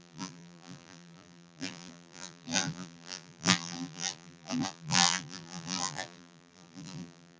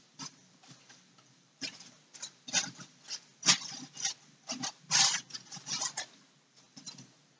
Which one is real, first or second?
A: second